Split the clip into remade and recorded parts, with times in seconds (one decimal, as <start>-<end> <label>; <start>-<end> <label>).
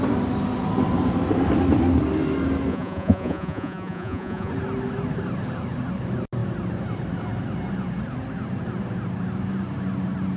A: 0.0-2.7 recorded; 2.7-4.5 remade; 4.5-10.4 recorded